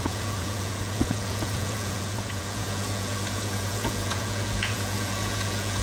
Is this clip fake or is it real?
fake